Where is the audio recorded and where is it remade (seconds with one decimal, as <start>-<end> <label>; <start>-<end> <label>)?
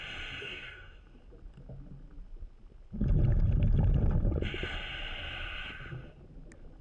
0.0-0.4 recorded; 0.4-1.0 remade; 1.0-6.8 recorded